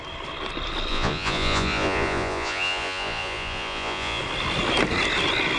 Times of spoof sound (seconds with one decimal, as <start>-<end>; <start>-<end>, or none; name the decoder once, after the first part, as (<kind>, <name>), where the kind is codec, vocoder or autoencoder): 0.9-4.2 (vocoder, Vocos)

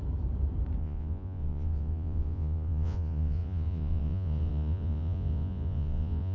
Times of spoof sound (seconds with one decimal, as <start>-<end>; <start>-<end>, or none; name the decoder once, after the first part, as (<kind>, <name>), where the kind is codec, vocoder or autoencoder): 0.8-6.3 (vocoder, Vocos)